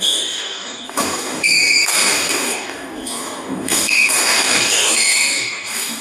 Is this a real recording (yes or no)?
no